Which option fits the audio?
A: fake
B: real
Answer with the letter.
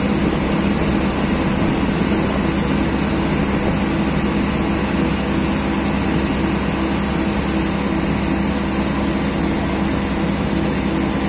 B